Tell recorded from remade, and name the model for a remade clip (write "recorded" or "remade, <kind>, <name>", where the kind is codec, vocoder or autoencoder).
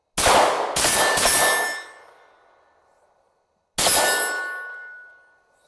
recorded